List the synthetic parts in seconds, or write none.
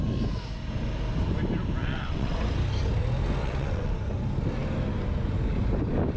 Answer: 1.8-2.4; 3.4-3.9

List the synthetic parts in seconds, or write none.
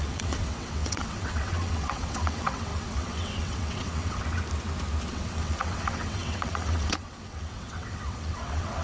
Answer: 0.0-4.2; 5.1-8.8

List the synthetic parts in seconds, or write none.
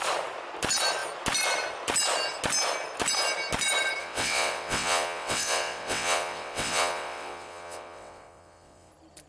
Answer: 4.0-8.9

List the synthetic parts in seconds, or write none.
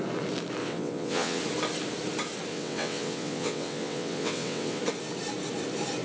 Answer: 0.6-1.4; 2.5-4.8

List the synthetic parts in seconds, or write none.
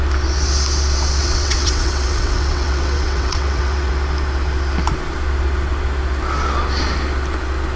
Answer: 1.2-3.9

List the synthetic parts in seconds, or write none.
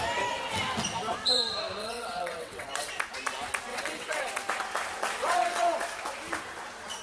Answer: 1.8-2.9; 3.7-4.3; 5.2-5.8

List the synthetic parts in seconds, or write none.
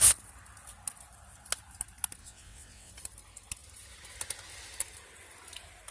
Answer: 2.2-2.9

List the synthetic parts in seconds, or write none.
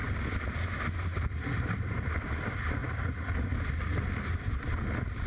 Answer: none